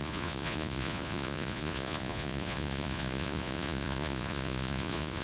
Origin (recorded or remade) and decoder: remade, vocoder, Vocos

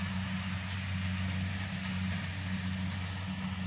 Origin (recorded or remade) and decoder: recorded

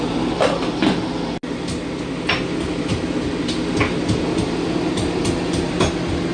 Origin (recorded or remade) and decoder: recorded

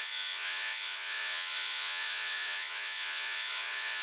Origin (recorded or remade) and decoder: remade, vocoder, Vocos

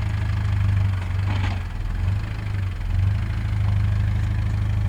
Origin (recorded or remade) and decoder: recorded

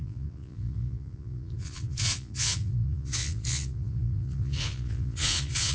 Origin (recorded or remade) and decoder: remade, vocoder, Vocos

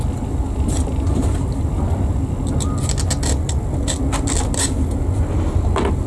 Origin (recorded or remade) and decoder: recorded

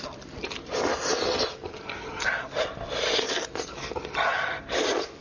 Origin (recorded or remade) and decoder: recorded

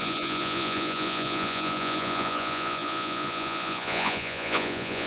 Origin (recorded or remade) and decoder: remade, vocoder, Vocos